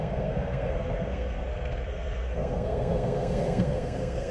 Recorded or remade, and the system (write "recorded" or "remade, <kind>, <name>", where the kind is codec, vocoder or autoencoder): remade, codec, SNAC